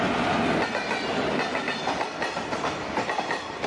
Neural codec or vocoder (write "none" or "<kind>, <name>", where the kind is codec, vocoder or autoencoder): none